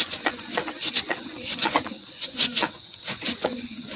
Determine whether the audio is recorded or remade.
remade